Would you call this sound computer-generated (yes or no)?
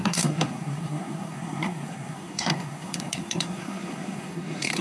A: yes